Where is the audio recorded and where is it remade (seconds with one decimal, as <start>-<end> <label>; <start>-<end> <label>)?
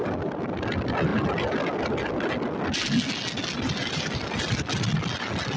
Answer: 0.0-5.6 recorded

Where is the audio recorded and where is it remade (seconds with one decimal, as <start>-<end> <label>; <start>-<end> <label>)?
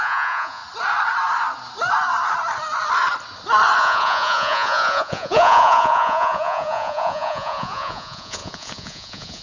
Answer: 0.0-0.6 remade; 0.6-3.8 recorded; 3.8-9.4 remade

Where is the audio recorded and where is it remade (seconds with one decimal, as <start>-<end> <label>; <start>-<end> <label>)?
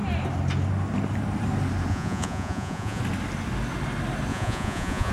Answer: 0.0-1.9 recorded; 1.9-3.0 remade; 3.0-4.3 recorded; 4.3-5.1 remade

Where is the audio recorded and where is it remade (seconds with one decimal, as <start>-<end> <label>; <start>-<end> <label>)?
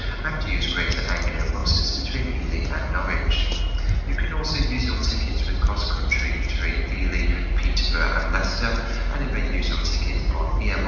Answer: 0.0-10.9 recorded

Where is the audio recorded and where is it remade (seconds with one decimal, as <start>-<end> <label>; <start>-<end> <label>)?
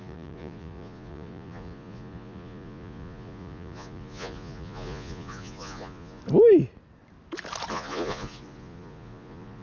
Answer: 0.0-6.2 remade; 6.2-7.7 recorded; 7.7-9.6 remade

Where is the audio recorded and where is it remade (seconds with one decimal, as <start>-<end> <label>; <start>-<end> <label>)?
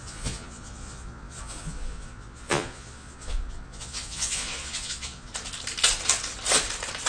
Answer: 0.0-5.3 remade; 5.3-7.1 recorded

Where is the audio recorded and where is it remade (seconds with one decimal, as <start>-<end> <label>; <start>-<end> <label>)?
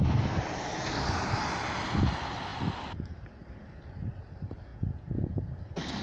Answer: 0.0-4.7 recorded; 4.7-5.5 remade; 5.5-6.0 recorded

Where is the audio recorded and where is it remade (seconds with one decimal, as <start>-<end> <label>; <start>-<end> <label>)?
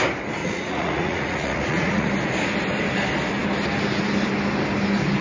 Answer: 0.0-0.4 recorded; 0.4-2.1 remade; 2.1-5.2 recorded